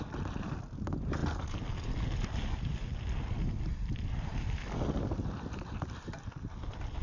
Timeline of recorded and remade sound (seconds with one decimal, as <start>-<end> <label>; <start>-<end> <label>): 0.0-2.7 recorded; 2.7-6.0 remade; 6.0-7.0 recorded